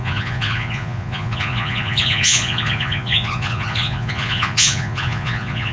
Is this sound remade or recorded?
remade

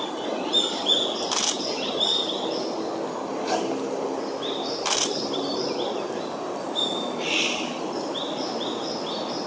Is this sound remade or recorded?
recorded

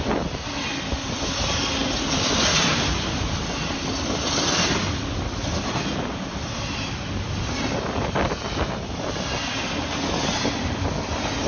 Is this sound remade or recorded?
recorded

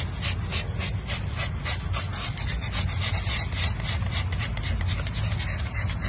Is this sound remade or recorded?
recorded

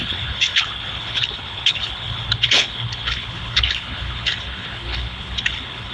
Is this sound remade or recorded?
remade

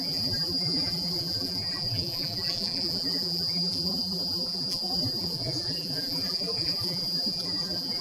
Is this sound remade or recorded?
remade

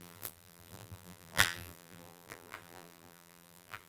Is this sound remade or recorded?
remade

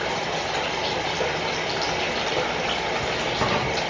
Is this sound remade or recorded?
recorded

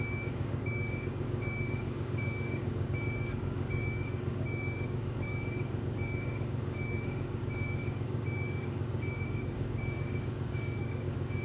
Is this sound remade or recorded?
remade